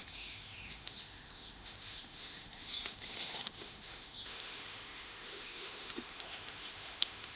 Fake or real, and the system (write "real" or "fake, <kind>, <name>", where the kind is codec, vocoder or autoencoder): fake, autoencoder, DAC-VAE